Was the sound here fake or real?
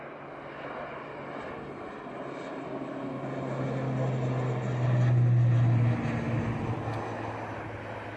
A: real